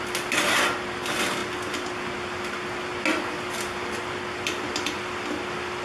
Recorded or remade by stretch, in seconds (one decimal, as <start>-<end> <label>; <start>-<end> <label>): 0.0-5.8 recorded

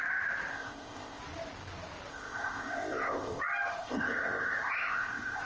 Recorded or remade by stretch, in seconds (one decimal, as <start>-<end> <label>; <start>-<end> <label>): 0.0-0.5 recorded; 0.5-1.2 remade; 1.2-2.1 recorded; 2.1-3.4 remade; 3.4-3.8 recorded; 3.8-5.4 remade